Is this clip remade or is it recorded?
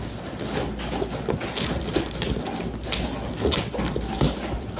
recorded